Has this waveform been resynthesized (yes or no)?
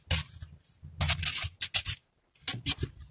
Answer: no